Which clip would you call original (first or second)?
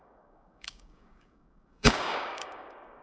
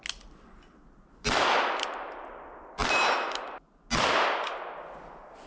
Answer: second